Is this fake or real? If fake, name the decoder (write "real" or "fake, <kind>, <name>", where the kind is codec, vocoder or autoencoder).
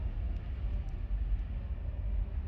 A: real